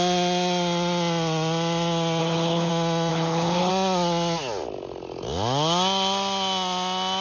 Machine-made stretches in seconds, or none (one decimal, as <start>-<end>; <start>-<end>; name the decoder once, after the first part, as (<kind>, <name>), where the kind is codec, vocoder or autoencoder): 2.2-2.7 (codec, HILCodec); 3.1-3.7